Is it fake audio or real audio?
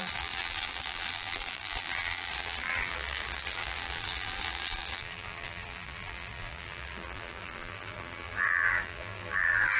fake